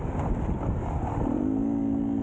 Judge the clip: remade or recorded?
recorded